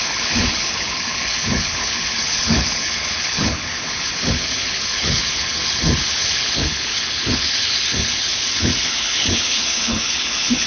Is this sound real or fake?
fake